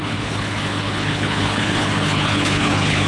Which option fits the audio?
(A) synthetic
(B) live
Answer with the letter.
A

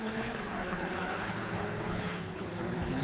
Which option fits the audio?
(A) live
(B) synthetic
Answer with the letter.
B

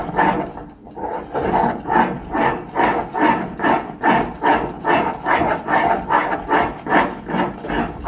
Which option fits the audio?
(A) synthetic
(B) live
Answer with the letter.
B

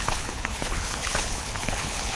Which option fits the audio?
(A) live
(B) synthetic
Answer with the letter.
B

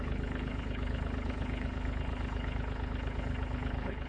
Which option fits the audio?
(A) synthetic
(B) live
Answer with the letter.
A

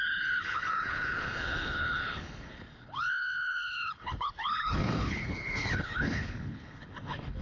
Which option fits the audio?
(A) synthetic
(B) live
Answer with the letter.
A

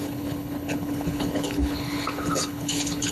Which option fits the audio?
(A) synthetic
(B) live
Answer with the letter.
A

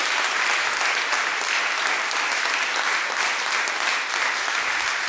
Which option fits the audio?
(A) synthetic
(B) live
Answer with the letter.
B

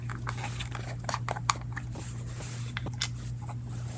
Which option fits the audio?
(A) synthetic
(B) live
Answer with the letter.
B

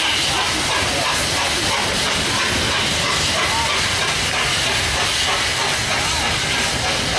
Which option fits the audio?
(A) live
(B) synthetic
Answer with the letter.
A